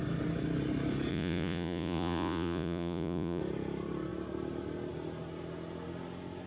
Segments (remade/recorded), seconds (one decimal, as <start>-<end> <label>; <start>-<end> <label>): 0.0-1.1 recorded; 1.1-3.4 remade; 3.4-6.5 recorded